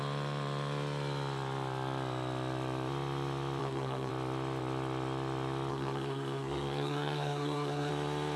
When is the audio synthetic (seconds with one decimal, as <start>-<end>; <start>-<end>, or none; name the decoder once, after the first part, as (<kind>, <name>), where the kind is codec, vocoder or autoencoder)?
3.6-4.1 (codec, SNAC); 5.7-7.9